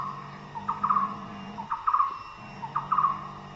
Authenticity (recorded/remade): recorded